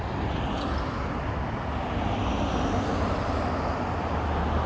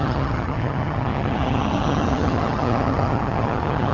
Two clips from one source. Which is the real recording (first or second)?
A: first